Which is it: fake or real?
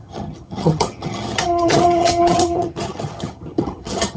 fake